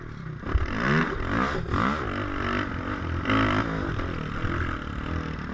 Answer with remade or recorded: recorded